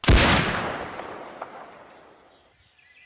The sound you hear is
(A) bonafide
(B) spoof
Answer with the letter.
A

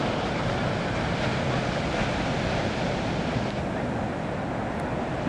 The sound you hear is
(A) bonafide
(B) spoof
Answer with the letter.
A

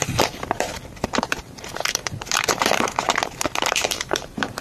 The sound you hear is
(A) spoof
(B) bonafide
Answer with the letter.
A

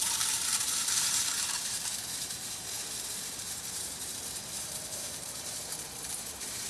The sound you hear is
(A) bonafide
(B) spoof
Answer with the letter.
B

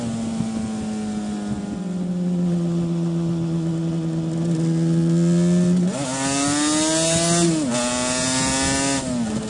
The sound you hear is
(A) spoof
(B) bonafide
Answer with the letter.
B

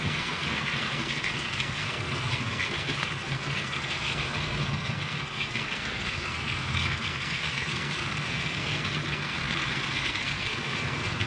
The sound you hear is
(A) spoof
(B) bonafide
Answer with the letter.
A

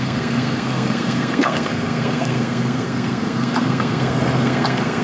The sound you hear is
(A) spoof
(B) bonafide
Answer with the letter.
A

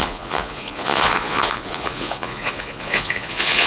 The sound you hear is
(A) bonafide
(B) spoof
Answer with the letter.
B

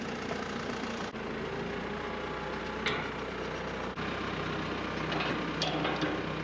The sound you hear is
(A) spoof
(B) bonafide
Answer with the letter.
B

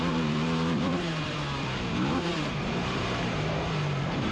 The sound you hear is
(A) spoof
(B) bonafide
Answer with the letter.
A